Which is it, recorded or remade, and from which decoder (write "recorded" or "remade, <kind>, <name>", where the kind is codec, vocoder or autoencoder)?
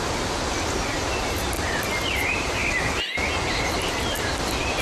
recorded